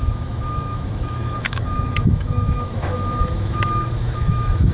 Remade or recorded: remade